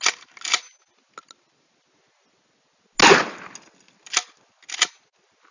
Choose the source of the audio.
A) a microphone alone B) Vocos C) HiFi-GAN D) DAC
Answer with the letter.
A